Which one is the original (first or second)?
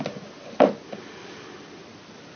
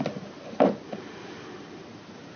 first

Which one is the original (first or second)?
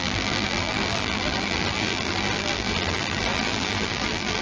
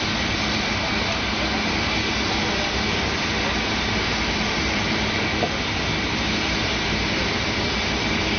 second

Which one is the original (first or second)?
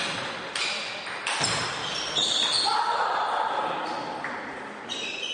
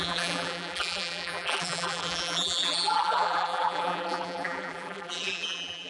first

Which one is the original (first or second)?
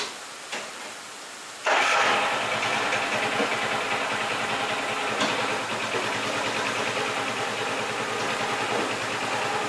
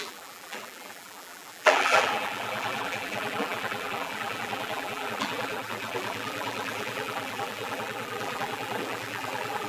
first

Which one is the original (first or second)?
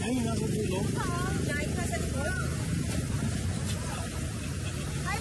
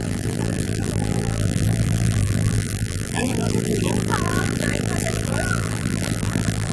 first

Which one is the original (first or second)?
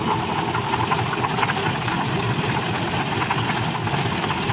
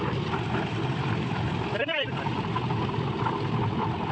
first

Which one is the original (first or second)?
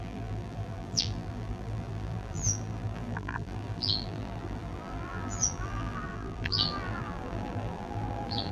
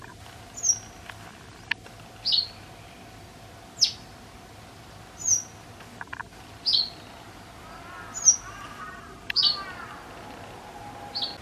second